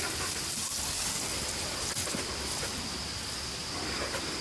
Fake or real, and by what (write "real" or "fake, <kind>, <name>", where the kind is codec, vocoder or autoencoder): real